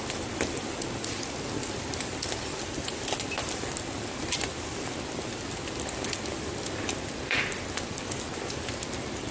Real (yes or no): yes